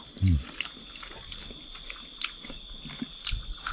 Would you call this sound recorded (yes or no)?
yes